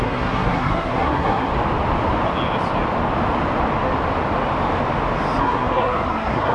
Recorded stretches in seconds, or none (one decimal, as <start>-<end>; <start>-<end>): 1.5-5.4